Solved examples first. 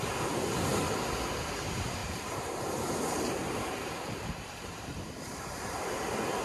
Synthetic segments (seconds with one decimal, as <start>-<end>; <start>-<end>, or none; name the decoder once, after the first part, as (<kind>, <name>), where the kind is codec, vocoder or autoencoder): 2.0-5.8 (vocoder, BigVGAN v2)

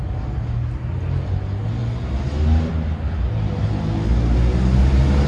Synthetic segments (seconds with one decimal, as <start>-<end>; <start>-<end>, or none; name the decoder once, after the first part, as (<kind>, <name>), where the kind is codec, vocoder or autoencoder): none

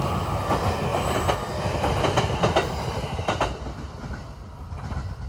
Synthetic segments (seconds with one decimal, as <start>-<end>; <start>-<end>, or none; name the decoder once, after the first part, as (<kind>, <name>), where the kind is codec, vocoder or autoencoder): none

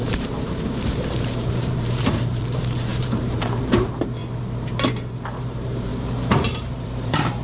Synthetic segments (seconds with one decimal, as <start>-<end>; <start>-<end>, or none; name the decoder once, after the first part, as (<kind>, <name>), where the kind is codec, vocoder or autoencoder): 0.0-4.2 (vocoder, BigVGAN v2); 5.4-5.9; 6.6-7.4

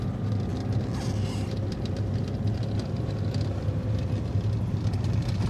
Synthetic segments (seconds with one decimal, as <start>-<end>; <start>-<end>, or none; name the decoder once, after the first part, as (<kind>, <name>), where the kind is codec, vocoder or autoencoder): none